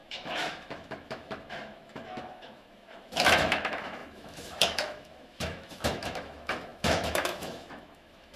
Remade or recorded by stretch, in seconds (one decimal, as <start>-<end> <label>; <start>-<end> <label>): 0.0-8.4 remade